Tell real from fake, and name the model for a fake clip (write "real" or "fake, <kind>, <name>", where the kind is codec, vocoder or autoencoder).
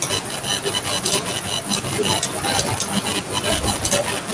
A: real